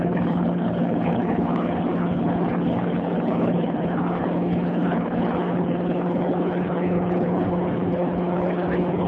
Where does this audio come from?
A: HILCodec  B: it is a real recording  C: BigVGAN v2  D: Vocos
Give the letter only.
A